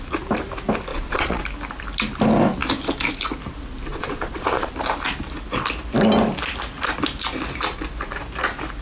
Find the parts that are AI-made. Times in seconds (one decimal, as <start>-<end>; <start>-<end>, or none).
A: 0.9-1.4; 3.9-4.7